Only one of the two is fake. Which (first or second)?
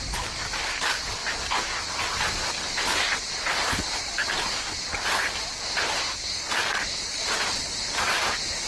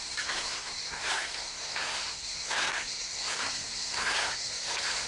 second